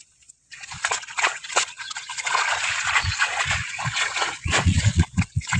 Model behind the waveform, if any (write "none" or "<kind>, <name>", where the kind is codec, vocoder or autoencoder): vocoder, Vocos